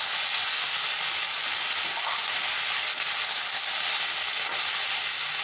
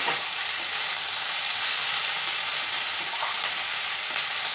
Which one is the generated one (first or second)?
second